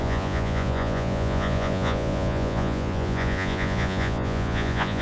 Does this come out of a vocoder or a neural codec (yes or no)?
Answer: yes